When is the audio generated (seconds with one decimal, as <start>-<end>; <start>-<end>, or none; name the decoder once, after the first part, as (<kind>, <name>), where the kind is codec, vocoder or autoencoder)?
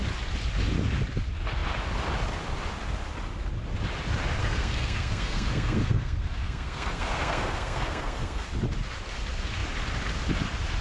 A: 4.4-8.4 (codec, SNAC)